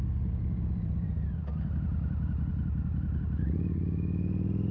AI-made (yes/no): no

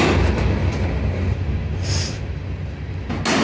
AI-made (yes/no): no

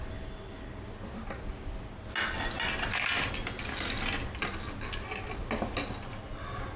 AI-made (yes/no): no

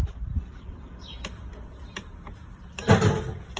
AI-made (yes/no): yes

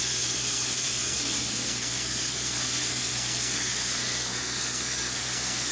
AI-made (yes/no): yes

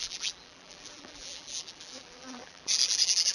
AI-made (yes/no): yes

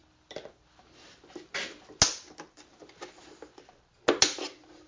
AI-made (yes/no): no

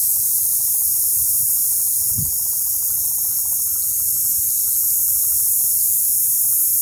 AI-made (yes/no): yes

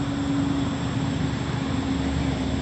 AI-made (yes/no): no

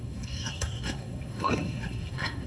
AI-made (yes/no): yes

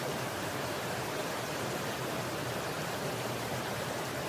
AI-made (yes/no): yes